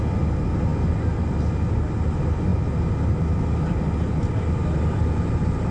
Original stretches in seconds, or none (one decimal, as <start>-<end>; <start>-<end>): 0.0-5.7